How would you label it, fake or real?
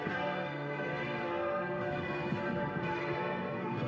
fake